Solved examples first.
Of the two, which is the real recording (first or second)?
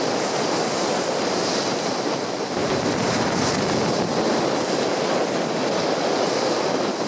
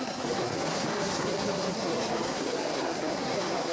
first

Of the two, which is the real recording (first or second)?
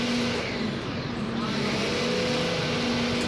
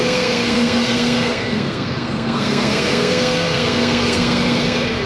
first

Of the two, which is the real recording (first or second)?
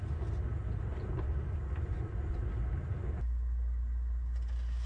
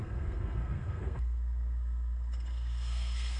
first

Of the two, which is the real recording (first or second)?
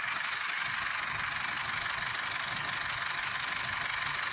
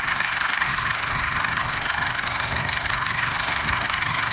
first